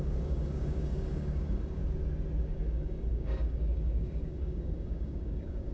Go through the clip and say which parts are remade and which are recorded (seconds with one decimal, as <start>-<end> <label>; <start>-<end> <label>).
0.0-1.8 remade; 1.8-2.4 recorded; 2.4-5.7 remade